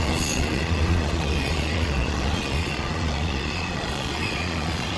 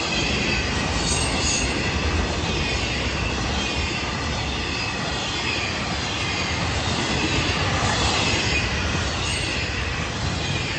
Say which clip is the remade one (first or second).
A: first